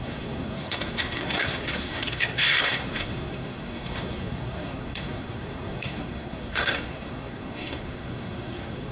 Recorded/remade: remade